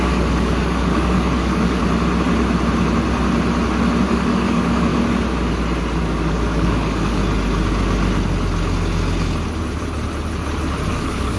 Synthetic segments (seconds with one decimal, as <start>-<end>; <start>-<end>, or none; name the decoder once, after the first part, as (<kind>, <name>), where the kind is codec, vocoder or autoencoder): 0.0-1.8 (codec, DAC); 4.1-4.9; 6.0-7.2; 10.9-11.4